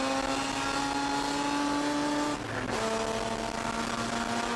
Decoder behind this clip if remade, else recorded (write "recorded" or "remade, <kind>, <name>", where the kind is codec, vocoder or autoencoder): recorded